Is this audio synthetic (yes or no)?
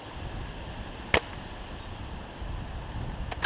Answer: no